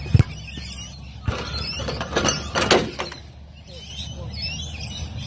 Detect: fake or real real